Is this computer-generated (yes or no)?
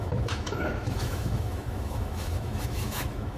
yes